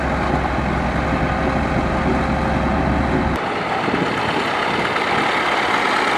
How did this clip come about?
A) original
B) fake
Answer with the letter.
A